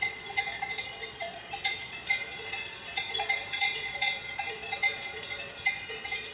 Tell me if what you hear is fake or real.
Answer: fake